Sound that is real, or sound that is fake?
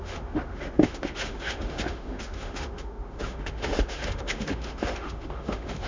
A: fake